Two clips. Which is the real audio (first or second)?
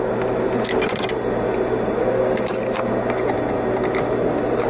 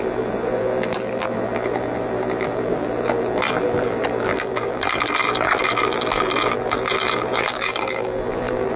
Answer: first